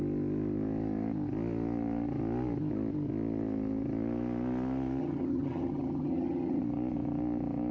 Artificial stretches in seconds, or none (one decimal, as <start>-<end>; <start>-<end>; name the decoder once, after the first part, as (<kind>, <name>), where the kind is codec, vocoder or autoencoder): 5.0-6.6 (vocoder, HiFi-GAN)